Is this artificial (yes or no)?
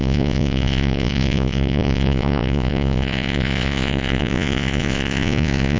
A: yes